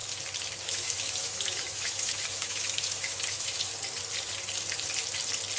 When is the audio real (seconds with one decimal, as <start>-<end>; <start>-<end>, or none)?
0.0-0.6; 3.7-5.6